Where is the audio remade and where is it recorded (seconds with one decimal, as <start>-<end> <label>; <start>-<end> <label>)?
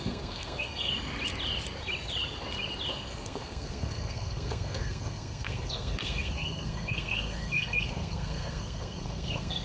0.0-0.9 remade; 0.9-2.9 recorded; 2.9-9.6 remade